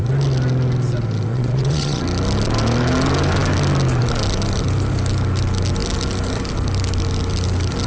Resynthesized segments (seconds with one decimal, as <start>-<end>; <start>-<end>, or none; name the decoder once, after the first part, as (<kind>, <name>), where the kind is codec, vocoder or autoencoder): 1.3-2.0 (vocoder, WaveNeXt)